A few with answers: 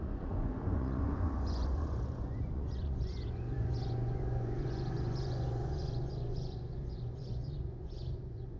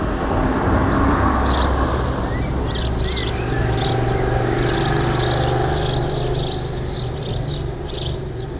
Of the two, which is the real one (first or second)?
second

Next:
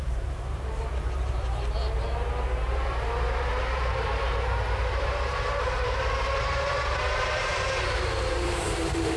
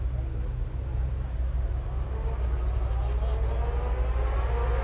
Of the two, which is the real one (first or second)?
second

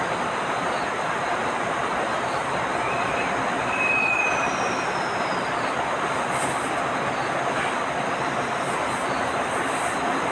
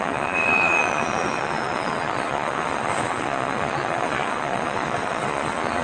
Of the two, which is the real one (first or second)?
first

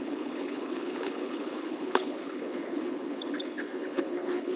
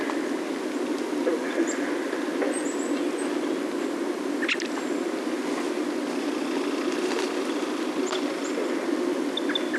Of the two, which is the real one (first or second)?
second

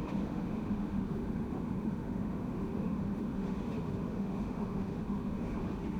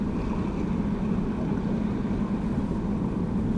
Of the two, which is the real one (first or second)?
second